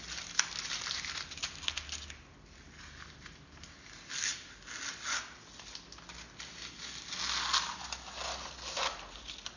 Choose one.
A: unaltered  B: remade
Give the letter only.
A